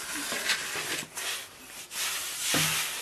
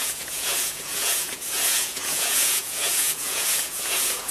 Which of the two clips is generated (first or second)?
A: second